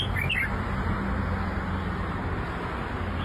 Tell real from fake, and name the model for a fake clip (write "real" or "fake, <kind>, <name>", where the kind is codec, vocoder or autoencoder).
real